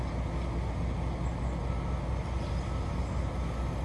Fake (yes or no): no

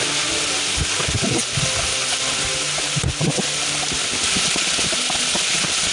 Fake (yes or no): no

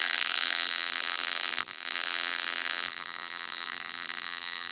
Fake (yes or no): yes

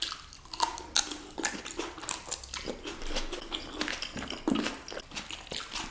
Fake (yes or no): no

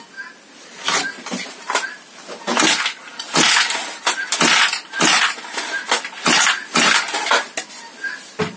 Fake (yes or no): no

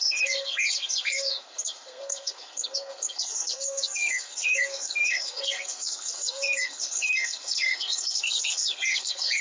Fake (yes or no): yes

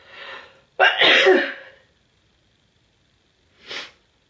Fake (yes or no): no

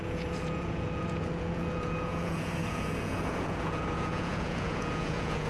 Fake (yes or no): yes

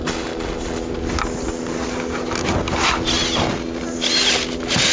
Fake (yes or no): no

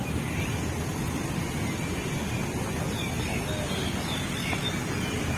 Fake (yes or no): no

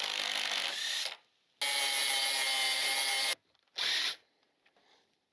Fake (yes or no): no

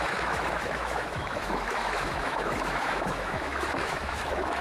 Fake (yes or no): yes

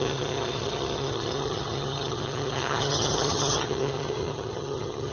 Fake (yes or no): yes